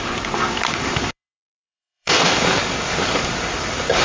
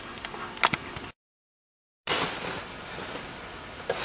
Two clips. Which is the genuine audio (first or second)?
second